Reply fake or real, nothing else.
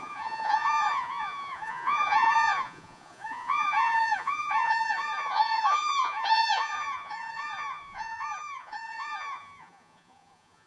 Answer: fake